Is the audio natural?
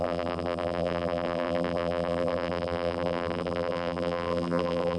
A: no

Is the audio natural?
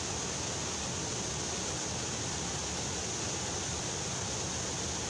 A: yes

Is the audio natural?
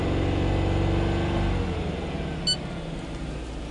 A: yes